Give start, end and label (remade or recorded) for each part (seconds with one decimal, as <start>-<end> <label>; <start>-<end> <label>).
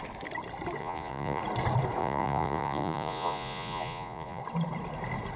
0.0-0.8 recorded; 0.8-1.4 remade; 1.4-2.0 recorded; 2.0-4.4 remade; 4.4-5.4 recorded